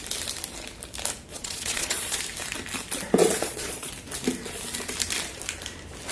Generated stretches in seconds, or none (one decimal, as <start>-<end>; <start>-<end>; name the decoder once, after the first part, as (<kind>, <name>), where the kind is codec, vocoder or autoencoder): 1.3-2.2 (vocoder, Vocos); 3.2-3.9